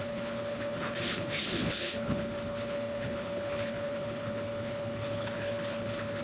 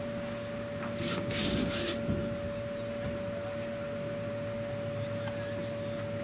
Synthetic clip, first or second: first